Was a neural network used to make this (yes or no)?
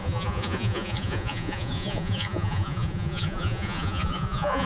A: yes